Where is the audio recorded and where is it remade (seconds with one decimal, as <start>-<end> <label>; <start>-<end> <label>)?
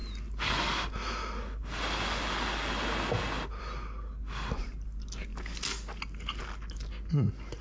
0.0-7.6 recorded